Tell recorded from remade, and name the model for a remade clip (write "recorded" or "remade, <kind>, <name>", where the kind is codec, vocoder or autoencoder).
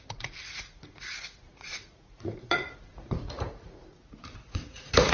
remade, vocoder, Vocos